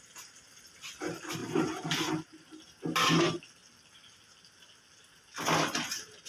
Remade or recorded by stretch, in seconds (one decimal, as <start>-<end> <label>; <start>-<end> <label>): 0.0-6.3 recorded